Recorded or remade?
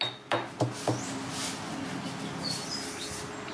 recorded